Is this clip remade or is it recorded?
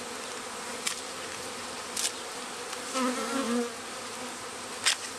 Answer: recorded